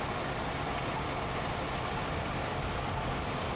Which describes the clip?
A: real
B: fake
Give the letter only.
A